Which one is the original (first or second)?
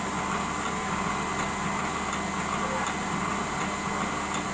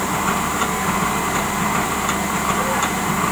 first